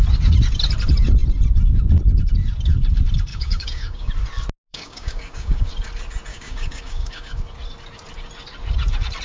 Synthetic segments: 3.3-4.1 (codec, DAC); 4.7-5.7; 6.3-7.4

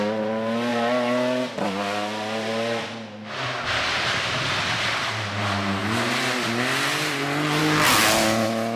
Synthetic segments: none